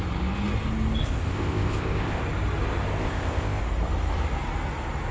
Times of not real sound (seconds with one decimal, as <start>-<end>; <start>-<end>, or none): 1.0-2.2; 3.0-3.6